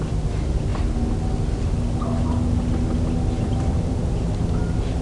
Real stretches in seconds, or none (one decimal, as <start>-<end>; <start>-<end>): 0.0-5.0